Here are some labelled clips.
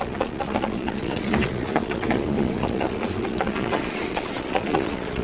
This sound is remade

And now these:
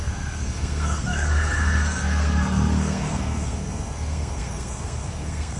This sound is remade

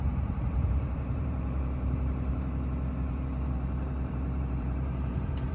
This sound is remade